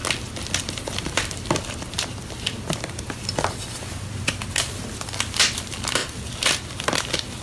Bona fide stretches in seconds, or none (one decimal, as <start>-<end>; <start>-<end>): 0.0-0.9